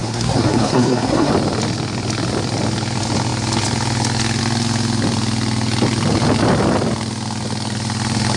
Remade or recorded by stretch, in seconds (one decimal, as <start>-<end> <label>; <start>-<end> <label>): 0.0-1.3 remade; 1.3-8.4 recorded